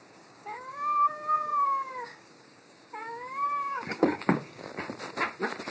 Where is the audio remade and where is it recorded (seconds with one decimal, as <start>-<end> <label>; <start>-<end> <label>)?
0.0-4.7 remade; 4.7-5.7 recorded